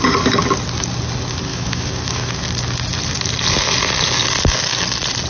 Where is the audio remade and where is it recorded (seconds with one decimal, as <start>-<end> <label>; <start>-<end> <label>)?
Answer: 0.0-1.5 recorded; 1.5-2.4 remade; 2.4-5.3 recorded